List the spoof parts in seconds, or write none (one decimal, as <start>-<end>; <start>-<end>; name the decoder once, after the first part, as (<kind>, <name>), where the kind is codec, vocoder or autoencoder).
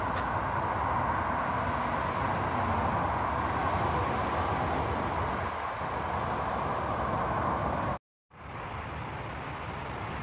none